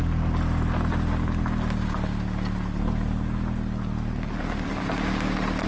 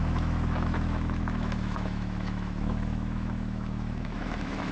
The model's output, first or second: second